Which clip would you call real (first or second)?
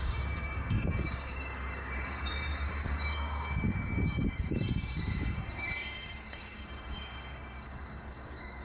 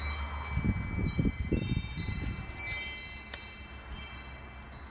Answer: second